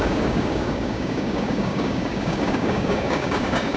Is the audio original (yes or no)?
no